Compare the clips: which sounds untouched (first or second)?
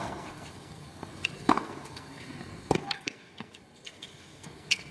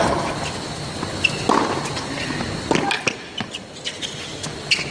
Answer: second